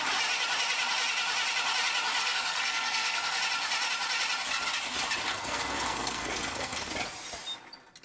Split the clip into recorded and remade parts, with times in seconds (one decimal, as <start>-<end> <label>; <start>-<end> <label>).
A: 0.0-2.2 recorded; 2.2-3.4 remade; 3.4-5.3 recorded; 5.3-6.9 remade; 6.9-8.0 recorded